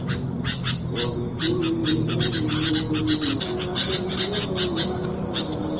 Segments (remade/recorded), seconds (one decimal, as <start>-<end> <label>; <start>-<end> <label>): 0.0-1.8 recorded; 1.8-2.7 remade; 2.7-5.8 recorded